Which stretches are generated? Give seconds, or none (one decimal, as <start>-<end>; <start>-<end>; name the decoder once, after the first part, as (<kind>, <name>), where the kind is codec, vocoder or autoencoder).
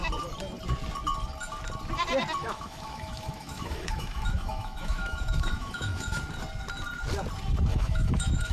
2.4-6.2 (autoencoder, DAC-VAE); 7.7-8.5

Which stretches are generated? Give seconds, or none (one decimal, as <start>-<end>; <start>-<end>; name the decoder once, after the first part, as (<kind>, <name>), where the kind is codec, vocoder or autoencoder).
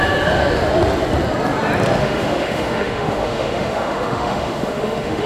2.0-5.3 (autoencoder, DAC-VAE)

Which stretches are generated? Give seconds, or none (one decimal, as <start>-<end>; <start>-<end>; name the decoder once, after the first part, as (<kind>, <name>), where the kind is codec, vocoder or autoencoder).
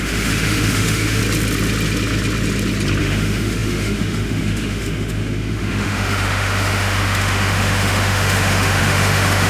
0.0-1.2 (autoencoder, DAC-VAE); 3.0-9.5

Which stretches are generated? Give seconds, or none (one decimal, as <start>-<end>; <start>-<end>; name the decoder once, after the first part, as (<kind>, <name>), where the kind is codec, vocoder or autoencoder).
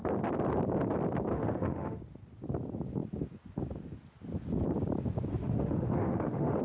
1.3-2.0 (autoencoder, DAC-VAE); 5.3-6.6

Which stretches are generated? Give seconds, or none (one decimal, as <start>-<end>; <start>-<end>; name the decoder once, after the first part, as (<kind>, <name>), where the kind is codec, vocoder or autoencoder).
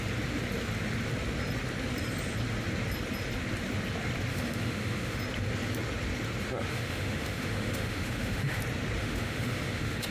4.3-5.2 (autoencoder, DAC-VAE); 6.7-8.6; 9.0-10.1